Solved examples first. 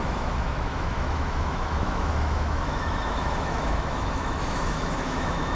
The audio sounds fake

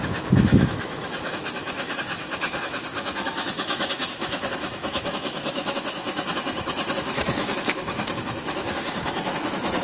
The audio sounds fake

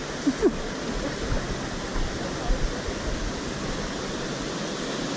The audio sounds real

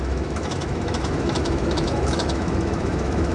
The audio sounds fake